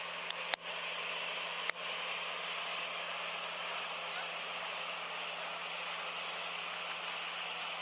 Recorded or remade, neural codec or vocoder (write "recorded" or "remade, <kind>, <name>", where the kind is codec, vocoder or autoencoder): recorded